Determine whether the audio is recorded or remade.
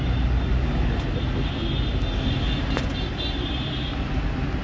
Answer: recorded